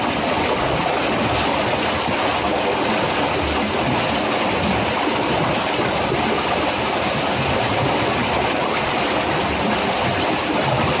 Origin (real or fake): real